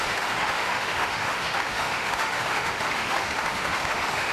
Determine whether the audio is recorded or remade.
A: remade